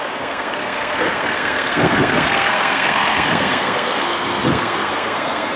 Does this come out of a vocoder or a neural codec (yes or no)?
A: yes